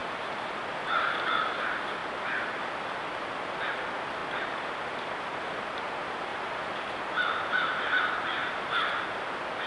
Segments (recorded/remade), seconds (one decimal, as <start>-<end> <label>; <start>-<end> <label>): 0.0-0.6 remade; 0.6-2.0 recorded; 2.0-2.7 remade; 2.7-6.3 recorded; 6.3-8.7 remade; 8.7-9.7 recorded